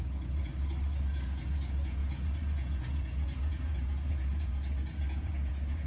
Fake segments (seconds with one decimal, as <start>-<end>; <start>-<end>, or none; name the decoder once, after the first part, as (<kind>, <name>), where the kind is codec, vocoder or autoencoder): 0.0-0.5 (vocoder, Vocos); 1.1-5.9